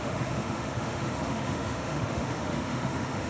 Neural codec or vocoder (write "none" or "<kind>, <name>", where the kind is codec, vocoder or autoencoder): autoencoder, DAC-VAE